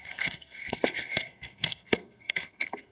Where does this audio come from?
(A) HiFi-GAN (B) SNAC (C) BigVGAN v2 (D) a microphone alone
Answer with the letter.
B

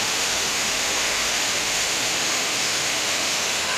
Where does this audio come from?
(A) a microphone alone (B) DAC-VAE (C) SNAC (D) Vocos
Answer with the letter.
B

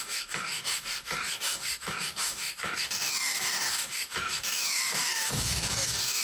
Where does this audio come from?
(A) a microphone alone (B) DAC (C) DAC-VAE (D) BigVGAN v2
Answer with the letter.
B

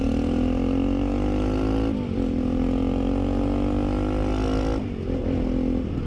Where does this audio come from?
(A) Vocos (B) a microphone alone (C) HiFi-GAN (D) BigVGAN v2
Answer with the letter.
B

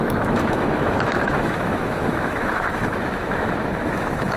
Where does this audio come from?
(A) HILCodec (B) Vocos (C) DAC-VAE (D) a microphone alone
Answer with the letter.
C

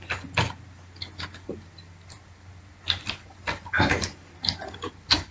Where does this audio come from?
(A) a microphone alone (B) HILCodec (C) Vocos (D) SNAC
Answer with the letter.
A